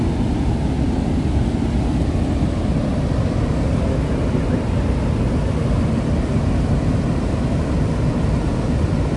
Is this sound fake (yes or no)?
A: no